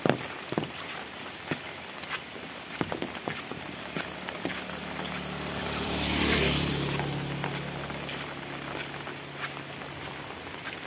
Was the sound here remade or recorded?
remade